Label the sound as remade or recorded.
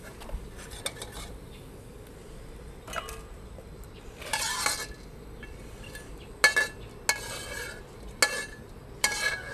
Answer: recorded